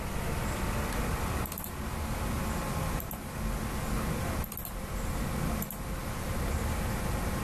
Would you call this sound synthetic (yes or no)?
no